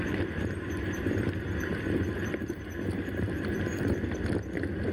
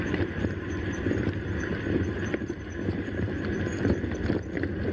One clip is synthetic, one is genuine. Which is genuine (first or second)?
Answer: first